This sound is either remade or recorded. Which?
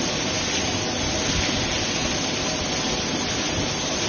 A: recorded